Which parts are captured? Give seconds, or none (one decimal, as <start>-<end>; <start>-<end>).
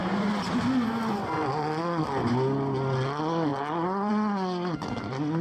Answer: 0.0-5.4